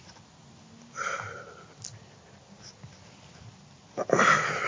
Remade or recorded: recorded